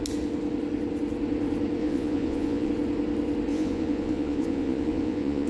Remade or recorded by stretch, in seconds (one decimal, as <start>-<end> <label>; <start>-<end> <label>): 0.0-1.8 recorded; 1.8-2.7 remade; 2.7-3.5 recorded; 3.5-5.5 remade